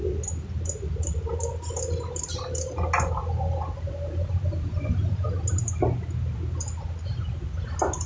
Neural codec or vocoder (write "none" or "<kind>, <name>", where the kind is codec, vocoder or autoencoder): none